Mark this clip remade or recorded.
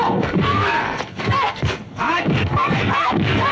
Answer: remade